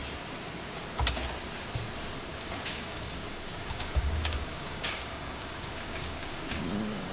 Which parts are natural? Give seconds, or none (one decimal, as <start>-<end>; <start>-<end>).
0.0-2.3; 6.6-7.1